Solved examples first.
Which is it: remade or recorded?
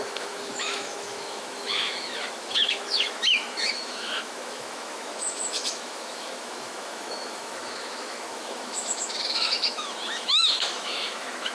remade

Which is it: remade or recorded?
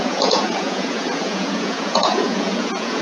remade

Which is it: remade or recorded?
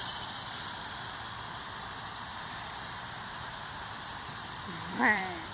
remade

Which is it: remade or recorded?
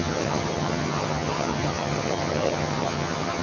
remade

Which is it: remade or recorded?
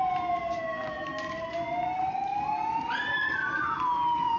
recorded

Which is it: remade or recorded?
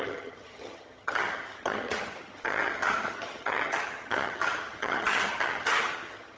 remade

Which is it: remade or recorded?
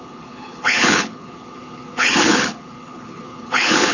remade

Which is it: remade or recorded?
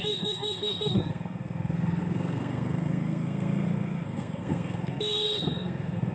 remade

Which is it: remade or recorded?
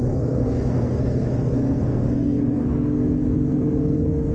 remade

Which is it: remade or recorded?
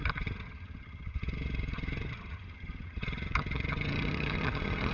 remade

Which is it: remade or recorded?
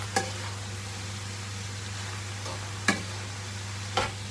recorded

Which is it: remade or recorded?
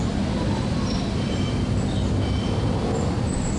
recorded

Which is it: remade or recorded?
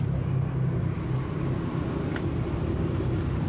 recorded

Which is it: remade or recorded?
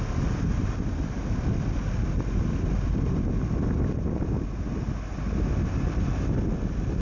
recorded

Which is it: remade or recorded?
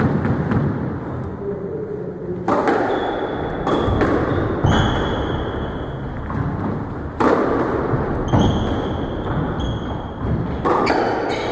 recorded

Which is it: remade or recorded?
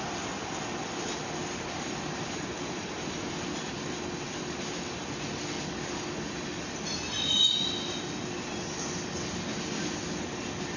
recorded